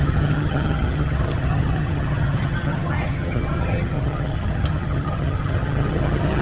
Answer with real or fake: fake